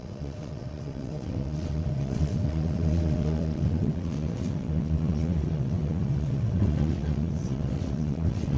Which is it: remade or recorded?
remade